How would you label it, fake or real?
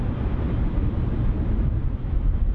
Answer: real